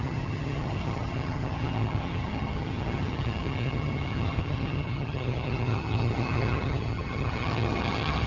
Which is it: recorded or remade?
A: remade